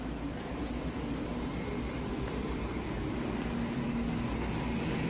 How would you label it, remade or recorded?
recorded